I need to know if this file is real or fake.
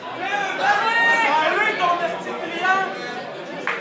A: real